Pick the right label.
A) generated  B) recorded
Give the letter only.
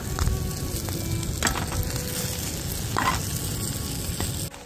B